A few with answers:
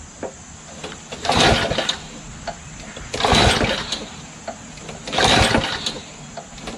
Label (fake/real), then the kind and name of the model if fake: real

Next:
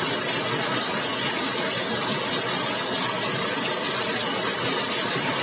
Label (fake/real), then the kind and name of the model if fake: real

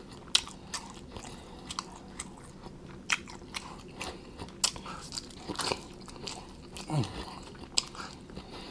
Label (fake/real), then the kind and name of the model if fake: real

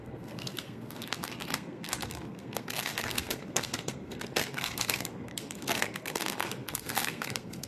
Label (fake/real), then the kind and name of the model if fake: fake, codec, SNAC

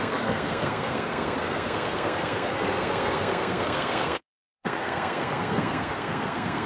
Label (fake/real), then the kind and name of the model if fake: fake, codec, SNAC